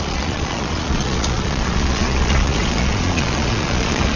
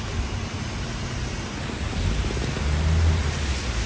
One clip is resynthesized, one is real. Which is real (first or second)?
second